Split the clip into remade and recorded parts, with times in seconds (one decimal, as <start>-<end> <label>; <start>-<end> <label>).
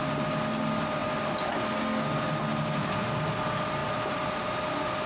0.0-5.1 recorded